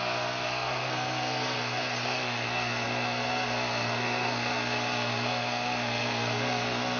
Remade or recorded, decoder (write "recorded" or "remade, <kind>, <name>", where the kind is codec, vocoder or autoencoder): remade, codec, SNAC